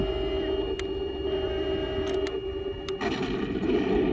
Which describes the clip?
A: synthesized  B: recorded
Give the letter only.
B